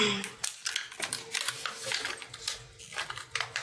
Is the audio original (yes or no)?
yes